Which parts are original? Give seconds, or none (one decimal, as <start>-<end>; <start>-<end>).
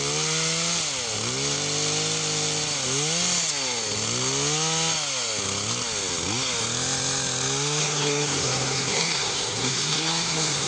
0.0-7.8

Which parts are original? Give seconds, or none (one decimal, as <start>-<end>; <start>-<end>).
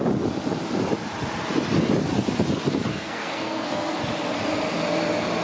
0.0-2.9; 4.0-5.4